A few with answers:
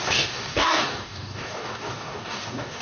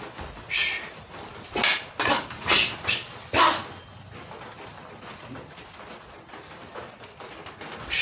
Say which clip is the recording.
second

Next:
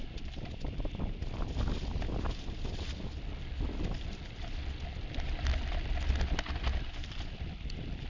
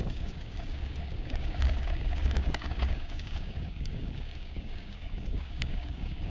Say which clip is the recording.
first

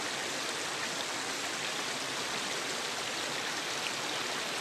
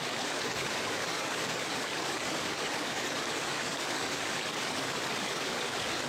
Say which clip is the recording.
first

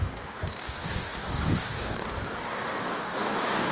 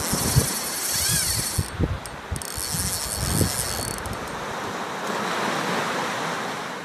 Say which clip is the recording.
second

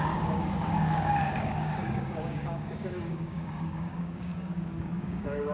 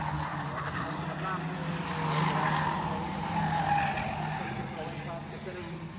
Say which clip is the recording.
second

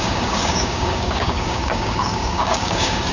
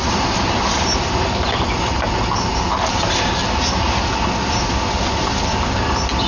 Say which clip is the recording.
second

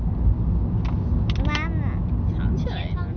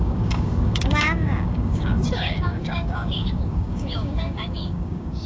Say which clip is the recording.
first